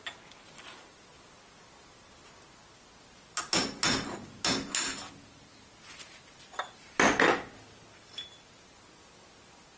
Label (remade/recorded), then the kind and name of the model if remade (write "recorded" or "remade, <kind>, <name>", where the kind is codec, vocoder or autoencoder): recorded